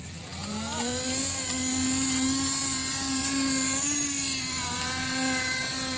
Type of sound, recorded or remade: recorded